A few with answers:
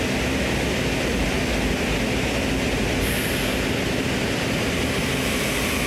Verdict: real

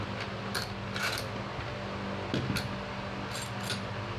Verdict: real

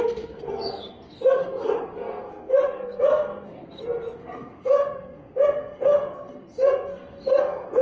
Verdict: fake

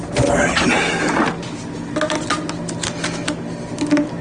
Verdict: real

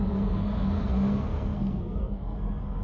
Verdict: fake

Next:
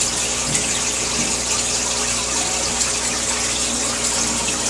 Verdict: real